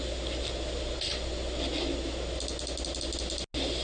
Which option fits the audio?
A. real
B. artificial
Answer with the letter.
A